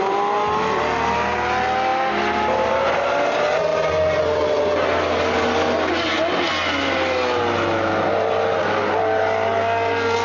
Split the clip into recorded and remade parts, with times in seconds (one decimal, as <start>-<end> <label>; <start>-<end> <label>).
0.0-10.2 recorded